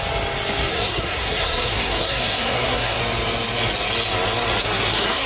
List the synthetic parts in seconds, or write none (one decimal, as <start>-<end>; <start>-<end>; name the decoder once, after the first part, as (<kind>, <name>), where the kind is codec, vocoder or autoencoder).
0.7-3.0 (codec, SNAC); 4.6-5.3